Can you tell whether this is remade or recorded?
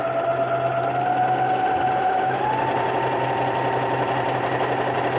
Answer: recorded